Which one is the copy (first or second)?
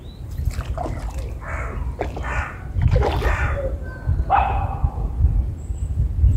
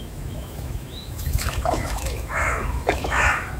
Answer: second